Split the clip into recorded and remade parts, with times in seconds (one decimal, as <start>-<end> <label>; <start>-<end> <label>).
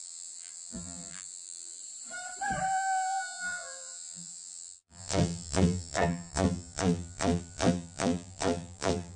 0.0-1.8 remade; 1.8-2.7 recorded; 2.7-9.2 remade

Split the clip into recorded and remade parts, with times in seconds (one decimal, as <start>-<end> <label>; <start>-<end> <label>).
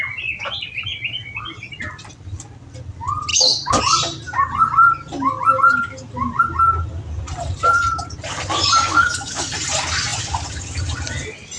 0.0-3.3 recorded; 3.3-3.8 remade; 3.8-8.8 recorded; 8.8-9.5 remade; 9.5-11.6 recorded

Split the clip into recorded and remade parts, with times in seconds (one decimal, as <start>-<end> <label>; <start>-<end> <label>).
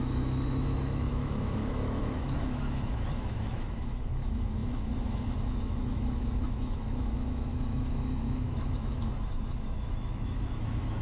0.0-11.0 remade